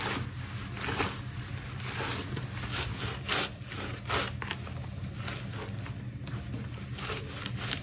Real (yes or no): yes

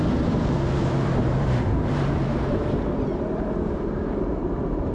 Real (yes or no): no